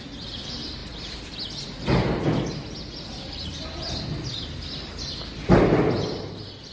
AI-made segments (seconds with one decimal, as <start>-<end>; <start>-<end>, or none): none